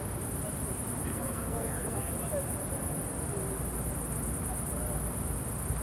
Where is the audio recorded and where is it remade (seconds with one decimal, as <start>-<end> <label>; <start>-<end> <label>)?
0.0-1.1 recorded; 1.1-2.1 remade; 2.1-5.8 recorded